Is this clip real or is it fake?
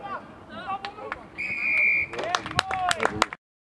real